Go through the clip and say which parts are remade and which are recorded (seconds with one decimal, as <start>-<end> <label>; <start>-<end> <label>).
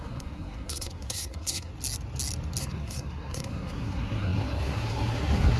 0.0-1.7 remade; 1.7-2.6 recorded; 2.6-5.6 remade